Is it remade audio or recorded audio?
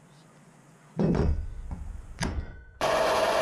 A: remade